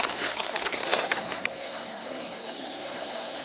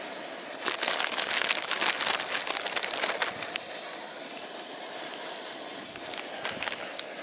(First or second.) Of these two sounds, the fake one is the first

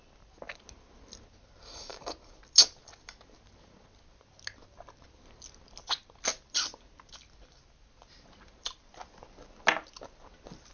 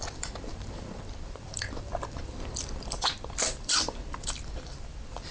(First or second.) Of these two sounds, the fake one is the second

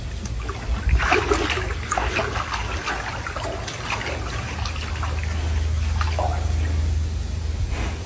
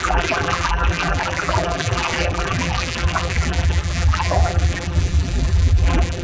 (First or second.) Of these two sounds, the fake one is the second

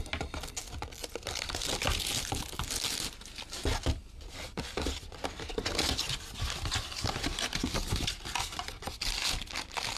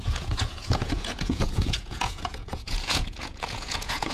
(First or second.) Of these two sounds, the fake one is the second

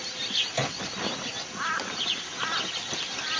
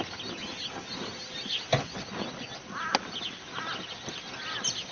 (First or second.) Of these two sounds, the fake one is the first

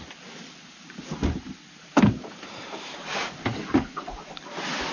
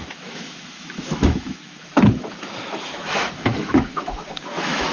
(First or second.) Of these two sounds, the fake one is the second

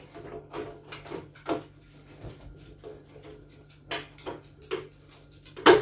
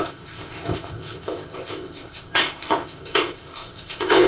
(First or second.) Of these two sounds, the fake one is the second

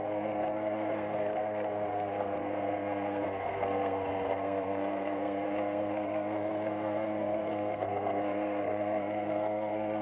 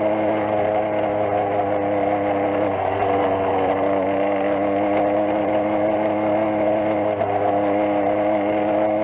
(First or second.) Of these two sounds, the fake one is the first